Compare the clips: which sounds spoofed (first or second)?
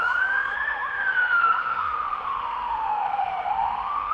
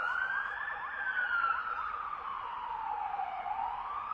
first